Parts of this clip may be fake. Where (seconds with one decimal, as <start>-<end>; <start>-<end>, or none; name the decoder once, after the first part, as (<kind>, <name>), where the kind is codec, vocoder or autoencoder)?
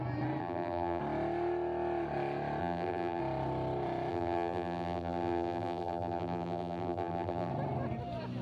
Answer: 0.4-1.0 (vocoder, BigVGAN v2); 2.6-3.2; 4.1-7.5